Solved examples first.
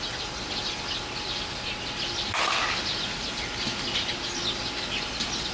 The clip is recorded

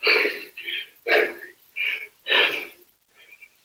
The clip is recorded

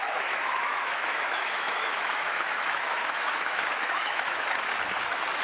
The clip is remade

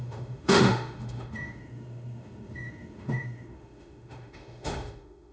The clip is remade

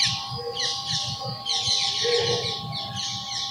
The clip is recorded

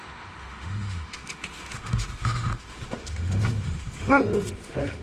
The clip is remade